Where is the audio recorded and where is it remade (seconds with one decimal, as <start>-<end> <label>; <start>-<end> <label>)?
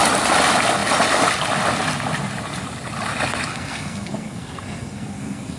0.0-3.5 recorded; 3.5-5.6 remade